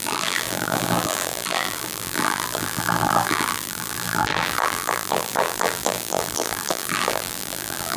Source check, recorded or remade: remade